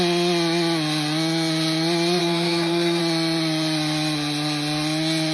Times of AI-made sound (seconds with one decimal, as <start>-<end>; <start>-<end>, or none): 2.2-3.0